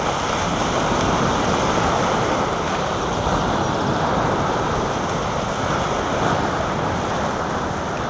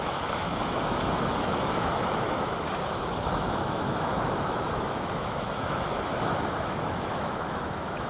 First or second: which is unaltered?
first